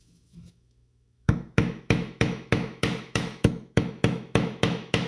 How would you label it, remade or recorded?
remade